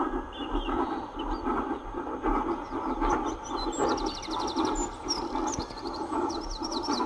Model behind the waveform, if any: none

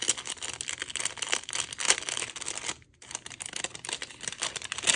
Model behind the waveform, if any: none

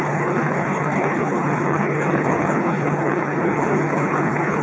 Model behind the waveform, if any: codec, HILCodec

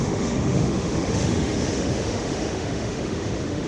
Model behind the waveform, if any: autoencoder, DAC-VAE